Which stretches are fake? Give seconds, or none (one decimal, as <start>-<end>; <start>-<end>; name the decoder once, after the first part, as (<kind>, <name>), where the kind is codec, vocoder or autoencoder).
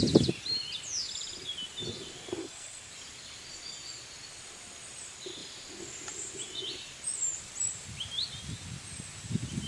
2.4-2.9 (codec, SNAC)